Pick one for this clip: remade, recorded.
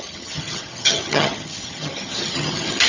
remade